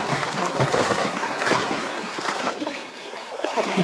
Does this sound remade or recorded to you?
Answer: remade